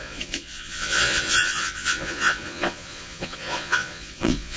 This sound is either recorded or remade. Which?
remade